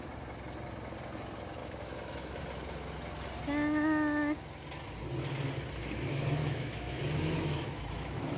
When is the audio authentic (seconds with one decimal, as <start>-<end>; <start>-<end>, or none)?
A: 0.0-1.6; 2.4-6.4